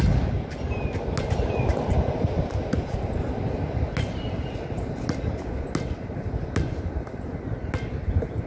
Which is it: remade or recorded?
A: recorded